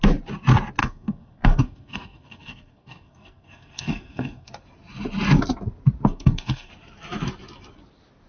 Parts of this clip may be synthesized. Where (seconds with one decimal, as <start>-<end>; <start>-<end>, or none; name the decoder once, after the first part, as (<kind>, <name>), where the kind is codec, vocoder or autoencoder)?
0.8-4.5 (codec, SNAC); 6.1-6.7